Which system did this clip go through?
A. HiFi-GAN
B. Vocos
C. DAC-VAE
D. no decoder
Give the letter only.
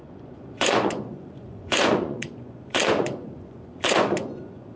B